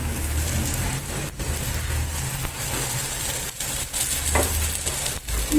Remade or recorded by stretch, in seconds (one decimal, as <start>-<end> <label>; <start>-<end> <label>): 0.0-5.6 recorded